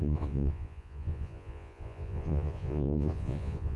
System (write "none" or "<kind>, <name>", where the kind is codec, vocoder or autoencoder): vocoder, Vocos